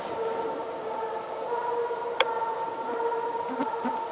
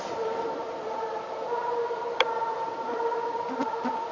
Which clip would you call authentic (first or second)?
first